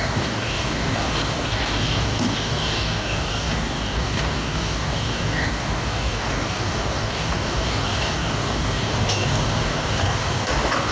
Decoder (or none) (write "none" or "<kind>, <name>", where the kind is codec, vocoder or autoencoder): codec, DAC